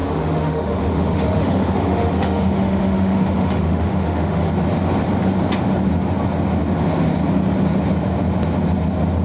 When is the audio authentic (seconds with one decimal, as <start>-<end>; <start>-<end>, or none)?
4.5-9.2